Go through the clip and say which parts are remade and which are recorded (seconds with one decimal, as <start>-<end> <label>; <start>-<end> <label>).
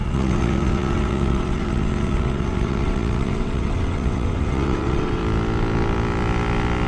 0.0-5.2 remade; 5.2-6.9 recorded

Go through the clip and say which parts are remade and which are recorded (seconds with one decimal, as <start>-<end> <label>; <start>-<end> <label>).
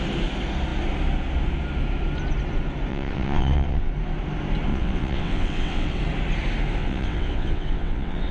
0.0-2.9 recorded; 2.9-3.9 remade; 3.9-4.7 recorded; 4.7-6.0 remade; 6.0-6.8 recorded; 6.8-8.3 remade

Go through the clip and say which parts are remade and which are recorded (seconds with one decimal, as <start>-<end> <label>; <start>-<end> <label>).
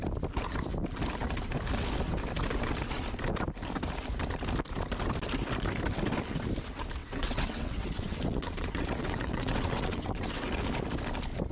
0.0-7.0 recorded; 7.0-10.6 remade; 10.6-11.5 recorded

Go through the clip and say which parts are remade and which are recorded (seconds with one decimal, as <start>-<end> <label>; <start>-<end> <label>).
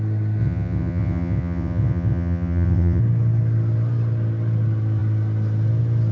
0.0-0.4 recorded; 0.4-3.0 remade; 3.0-6.1 recorded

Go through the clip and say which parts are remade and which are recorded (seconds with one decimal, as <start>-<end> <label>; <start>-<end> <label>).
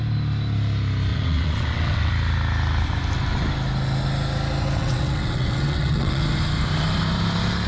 0.0-1.1 recorded; 1.1-2.1 remade; 2.1-4.8 recorded; 4.8-6.2 remade; 6.2-7.7 recorded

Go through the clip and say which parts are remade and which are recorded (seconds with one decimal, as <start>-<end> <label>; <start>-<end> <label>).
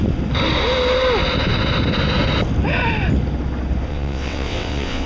0.0-3.9 recorded; 3.9-5.1 remade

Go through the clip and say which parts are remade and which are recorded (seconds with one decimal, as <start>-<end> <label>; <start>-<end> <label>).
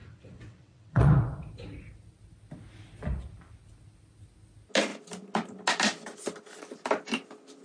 0.0-1.1 remade; 1.1-7.6 recorded